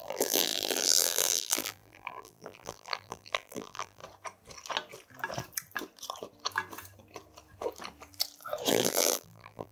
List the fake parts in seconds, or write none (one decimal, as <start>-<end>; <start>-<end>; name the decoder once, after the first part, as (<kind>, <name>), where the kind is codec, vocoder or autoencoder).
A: 0.0-4.0 (vocoder, BigVGAN v2); 8.7-9.7